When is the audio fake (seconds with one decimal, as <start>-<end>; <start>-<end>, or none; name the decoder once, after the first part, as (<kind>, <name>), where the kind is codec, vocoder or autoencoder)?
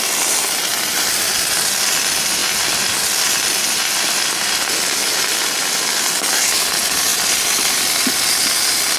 0.7-1.2 (vocoder, BigVGAN v2); 7.1-7.7